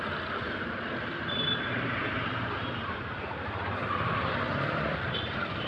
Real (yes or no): no